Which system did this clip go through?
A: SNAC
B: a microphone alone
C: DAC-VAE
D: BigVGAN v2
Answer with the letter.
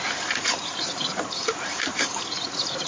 D